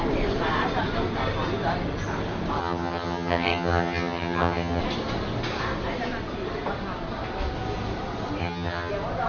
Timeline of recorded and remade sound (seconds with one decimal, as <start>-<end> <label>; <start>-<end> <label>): 0.0-2.6 recorded; 2.6-4.8 remade; 4.8-8.4 recorded; 8.4-8.9 remade; 8.9-9.3 recorded